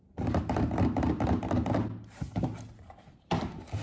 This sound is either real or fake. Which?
real